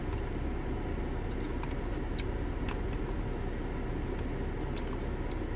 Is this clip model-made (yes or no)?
no